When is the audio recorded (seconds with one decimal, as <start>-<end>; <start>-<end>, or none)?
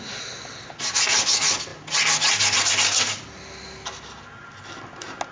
0.0-5.3